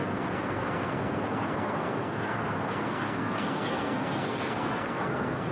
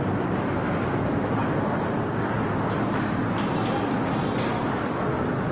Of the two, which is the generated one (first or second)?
first